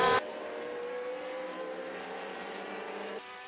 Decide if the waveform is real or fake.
real